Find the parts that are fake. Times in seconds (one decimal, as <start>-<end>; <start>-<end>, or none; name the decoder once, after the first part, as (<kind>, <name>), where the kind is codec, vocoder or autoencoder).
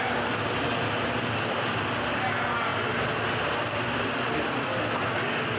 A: none